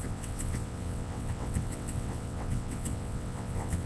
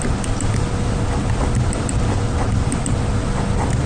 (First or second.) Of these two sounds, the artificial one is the first